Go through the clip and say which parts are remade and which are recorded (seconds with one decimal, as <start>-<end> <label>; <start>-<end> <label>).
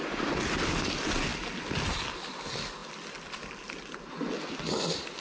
0.0-5.2 recorded